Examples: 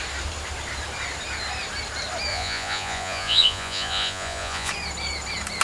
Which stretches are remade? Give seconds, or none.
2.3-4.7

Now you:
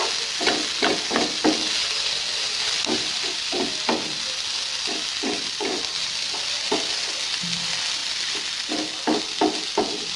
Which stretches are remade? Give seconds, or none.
none

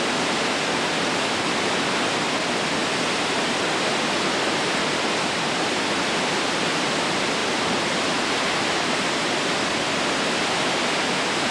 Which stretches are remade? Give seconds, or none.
none